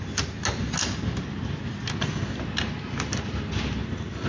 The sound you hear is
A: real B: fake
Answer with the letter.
A